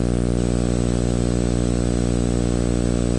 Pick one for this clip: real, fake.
real